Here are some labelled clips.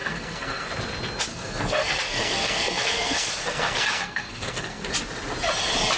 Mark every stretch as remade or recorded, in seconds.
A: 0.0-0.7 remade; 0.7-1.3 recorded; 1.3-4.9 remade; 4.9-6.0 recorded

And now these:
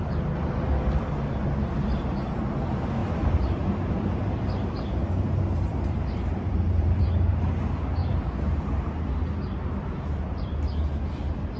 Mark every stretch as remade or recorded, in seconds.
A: 0.0-3.0 recorded; 3.0-7.4 remade; 7.4-8.0 recorded; 8.0-8.9 remade; 8.9-11.6 recorded

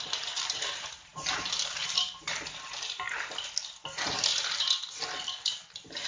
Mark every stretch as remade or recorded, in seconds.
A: 0.0-6.1 recorded